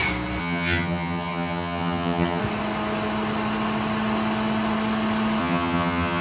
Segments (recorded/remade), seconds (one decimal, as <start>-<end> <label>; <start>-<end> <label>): 0.0-0.4 recorded; 0.4-2.4 remade; 2.4-5.4 recorded; 5.4-6.2 remade